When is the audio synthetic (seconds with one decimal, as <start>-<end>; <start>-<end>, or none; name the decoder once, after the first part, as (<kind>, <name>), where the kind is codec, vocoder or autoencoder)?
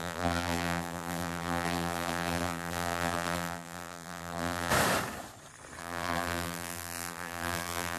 0.0-4.7 (vocoder, BigVGAN v2); 5.8-8.0